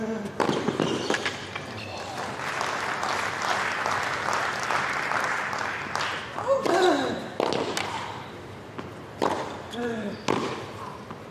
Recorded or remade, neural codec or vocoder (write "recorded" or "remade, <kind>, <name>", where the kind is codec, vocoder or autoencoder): recorded